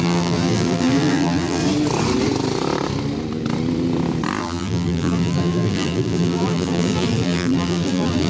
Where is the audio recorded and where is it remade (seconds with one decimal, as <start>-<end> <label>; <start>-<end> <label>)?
0.0-1.6 remade; 1.6-4.4 recorded; 4.4-8.3 remade